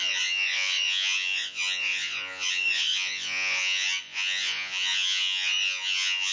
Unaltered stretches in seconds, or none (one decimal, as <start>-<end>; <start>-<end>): none